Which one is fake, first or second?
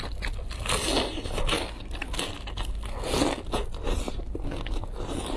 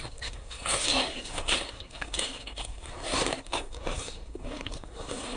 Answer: second